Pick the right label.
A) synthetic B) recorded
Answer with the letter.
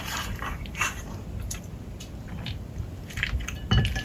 A